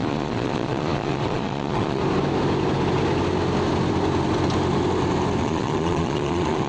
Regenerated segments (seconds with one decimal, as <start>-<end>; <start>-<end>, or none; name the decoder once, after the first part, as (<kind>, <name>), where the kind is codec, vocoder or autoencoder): 0.0-2.0 (vocoder, Vocos); 5.4-6.7